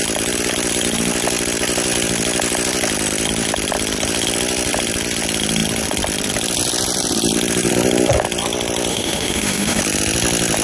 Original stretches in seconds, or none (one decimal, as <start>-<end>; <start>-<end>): 0.0-8.9; 9.8-10.6